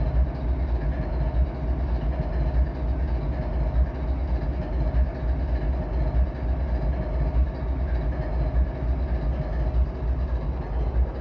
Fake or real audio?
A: real